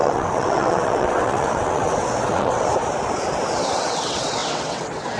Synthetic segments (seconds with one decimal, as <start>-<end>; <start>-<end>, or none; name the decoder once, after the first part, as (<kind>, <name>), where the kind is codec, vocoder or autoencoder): 0.0-2.7 (vocoder, WaveNeXt); 3.9-5.2